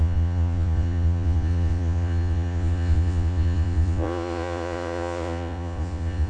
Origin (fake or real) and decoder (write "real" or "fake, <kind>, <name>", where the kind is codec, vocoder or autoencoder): fake, vocoder, Vocos